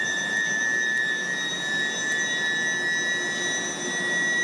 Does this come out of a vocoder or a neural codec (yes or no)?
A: no